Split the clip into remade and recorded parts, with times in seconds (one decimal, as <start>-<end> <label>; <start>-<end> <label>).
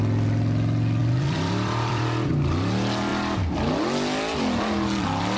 0.0-1.0 recorded; 1.0-2.3 remade; 2.3-5.4 recorded